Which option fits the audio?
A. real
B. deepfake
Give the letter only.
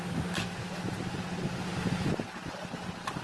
A